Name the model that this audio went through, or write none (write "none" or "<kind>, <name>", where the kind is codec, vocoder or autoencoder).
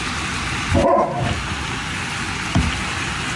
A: none